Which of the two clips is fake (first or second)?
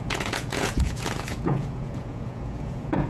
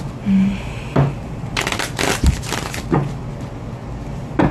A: first